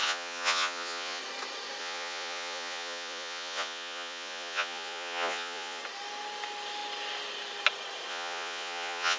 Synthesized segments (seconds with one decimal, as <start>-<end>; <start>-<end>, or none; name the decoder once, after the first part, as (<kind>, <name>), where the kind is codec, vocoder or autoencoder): 0.0-1.2 (vocoder, Vocos); 1.8-5.8; 8.1-9.2